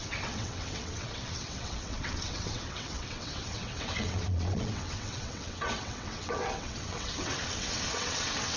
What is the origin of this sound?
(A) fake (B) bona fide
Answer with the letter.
A